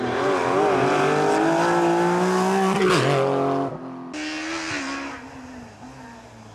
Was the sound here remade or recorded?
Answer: recorded